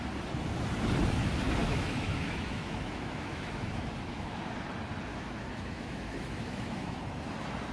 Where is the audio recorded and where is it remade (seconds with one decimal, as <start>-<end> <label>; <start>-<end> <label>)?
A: 0.0-1.6 recorded; 1.6-4.4 remade; 4.4-5.1 recorded; 5.1-7.0 remade; 7.0-7.7 recorded